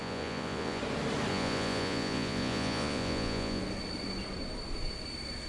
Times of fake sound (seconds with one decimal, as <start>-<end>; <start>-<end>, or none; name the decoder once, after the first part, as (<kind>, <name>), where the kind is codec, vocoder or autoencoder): 0.0-0.8 (vocoder, Vocos); 1.3-3.6